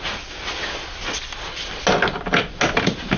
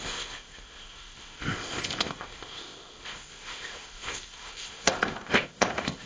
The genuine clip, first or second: first